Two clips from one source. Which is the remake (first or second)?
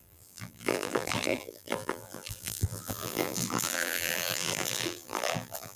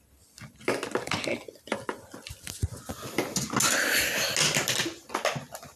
first